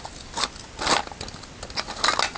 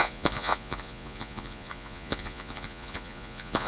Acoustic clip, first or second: first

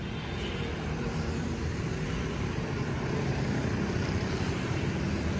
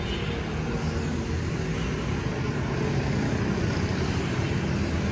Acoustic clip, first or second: second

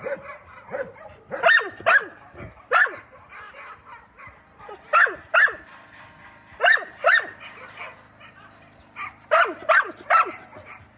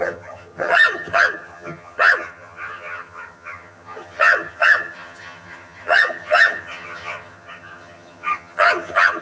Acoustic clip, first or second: first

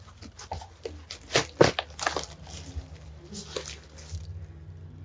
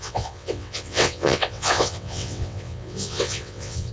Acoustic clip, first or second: first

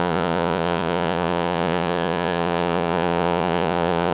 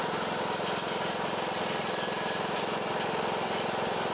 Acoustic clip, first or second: second